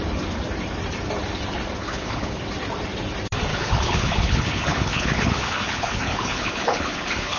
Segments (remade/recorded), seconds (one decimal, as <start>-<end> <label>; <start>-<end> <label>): 0.0-1.8 recorded; 1.8-2.4 remade; 2.4-3.5 recorded; 3.5-7.4 remade